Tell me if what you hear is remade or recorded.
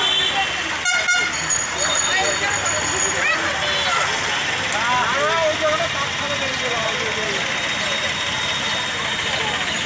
recorded